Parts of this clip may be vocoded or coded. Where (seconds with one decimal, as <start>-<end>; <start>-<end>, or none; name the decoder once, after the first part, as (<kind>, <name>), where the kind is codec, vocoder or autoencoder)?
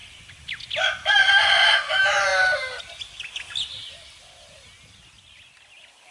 none